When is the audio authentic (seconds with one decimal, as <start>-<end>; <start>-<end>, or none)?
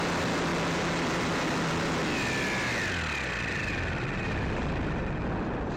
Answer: 0.0-5.8